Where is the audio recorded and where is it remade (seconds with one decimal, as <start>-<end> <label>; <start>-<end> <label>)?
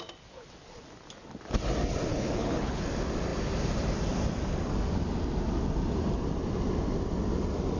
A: 0.0-2.1 recorded; 2.1-2.9 remade; 2.9-7.8 recorded